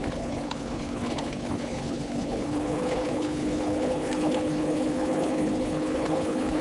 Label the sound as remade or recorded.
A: remade